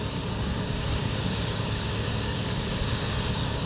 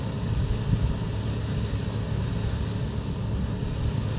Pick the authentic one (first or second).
second